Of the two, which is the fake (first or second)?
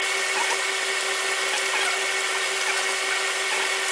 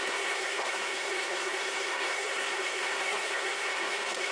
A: second